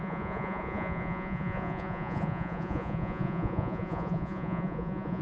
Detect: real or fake fake